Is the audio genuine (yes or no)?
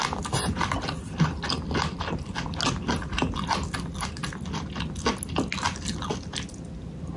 yes